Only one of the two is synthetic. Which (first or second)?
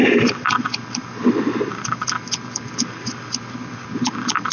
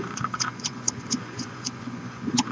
second